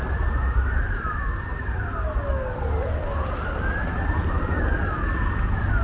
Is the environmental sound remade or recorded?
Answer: recorded